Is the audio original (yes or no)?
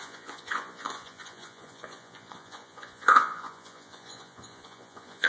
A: no